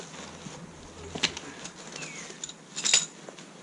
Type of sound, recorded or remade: recorded